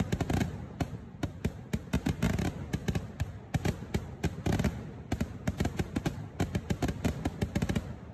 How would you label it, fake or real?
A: real